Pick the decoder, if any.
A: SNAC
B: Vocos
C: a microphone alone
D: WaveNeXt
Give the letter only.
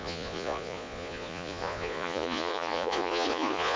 B